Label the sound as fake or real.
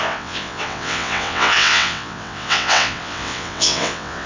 fake